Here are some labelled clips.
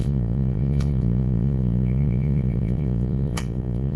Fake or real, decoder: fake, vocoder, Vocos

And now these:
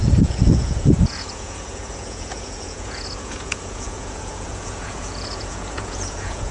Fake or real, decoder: fake, vocoder, Vocos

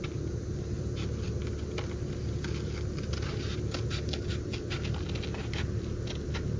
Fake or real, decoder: real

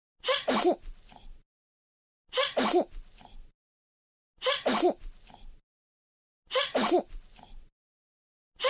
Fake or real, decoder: real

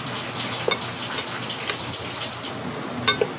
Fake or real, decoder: real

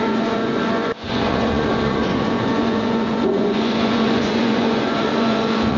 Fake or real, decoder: fake, vocoder, Vocos